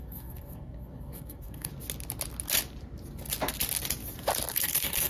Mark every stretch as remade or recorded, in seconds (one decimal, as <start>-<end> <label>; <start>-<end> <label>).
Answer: 0.0-1.7 remade; 1.7-4.5 recorded; 4.5-5.1 remade